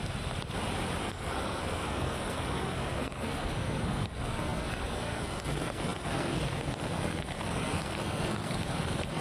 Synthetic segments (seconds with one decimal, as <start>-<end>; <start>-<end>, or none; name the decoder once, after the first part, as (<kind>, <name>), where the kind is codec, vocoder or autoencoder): 1.0-9.2 (codec, SNAC)